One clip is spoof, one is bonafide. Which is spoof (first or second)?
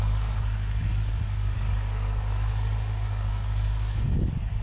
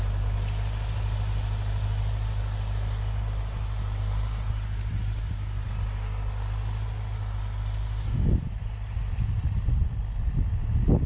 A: first